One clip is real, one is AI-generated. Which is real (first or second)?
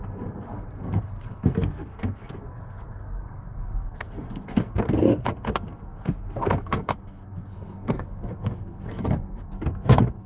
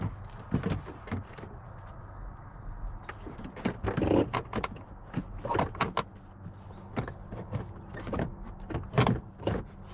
second